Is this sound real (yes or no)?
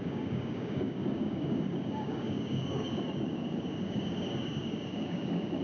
no